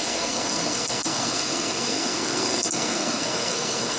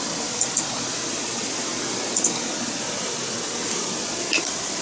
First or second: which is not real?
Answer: first